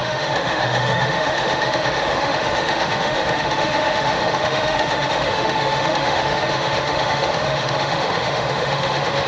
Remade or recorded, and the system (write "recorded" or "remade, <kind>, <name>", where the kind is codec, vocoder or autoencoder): remade, autoencoder, DAC-VAE